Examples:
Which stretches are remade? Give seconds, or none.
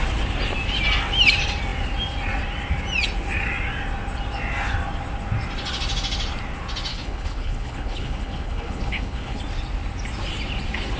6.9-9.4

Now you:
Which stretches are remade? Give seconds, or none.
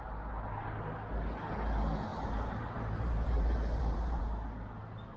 2.1-4.2